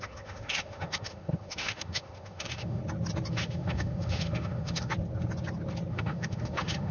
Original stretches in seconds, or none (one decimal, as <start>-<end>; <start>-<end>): 2.8-3.3; 4.9-5.9